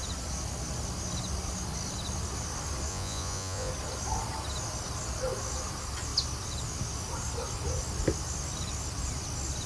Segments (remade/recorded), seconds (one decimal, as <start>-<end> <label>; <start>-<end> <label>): 0.0-2.9 recorded; 2.9-3.7 remade; 3.7-9.7 recorded